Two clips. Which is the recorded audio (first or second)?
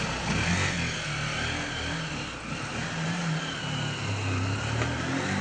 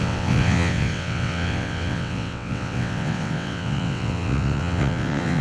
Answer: first